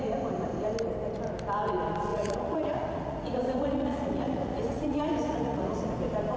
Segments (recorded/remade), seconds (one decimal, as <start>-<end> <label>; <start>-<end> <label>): 0.0-2.1 recorded; 2.1-5.9 remade; 5.9-6.4 recorded